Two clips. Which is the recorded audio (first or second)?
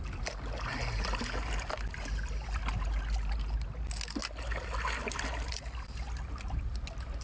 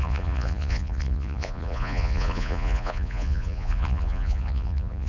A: first